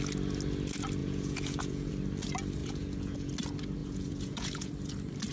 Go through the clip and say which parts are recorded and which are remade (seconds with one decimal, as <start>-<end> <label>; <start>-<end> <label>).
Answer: 0.0-1.0 recorded; 1.0-1.9 remade; 1.9-2.6 recorded; 2.6-3.3 remade; 3.3-3.8 recorded; 3.8-4.7 remade; 4.7-5.3 recorded